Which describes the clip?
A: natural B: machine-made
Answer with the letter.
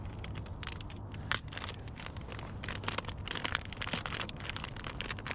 A